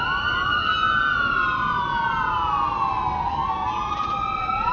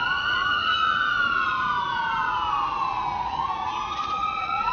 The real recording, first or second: first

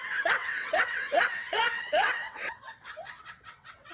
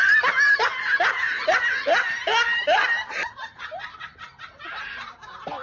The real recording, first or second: second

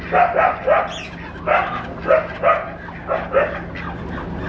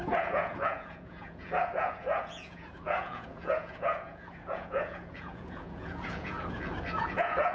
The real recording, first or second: first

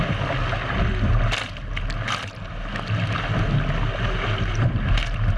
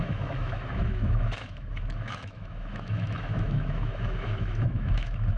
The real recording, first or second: first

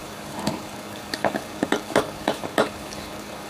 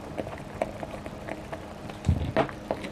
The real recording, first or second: second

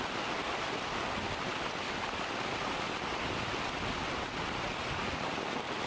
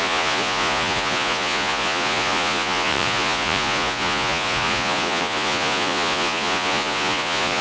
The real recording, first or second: first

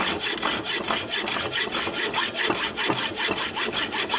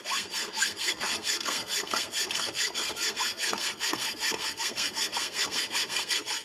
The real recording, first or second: first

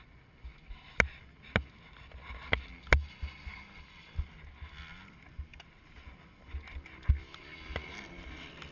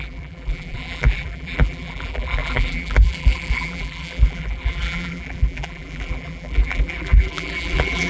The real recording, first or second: first